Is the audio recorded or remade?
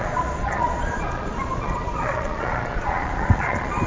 remade